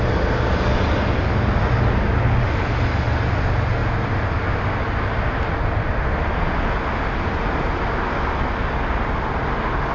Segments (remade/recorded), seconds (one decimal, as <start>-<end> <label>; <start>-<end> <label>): 0.0-9.9 recorded